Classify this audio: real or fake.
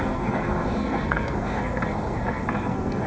fake